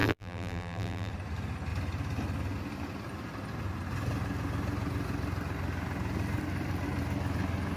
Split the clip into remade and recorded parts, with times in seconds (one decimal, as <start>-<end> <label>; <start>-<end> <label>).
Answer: 0.0-1.1 remade; 1.1-7.8 recorded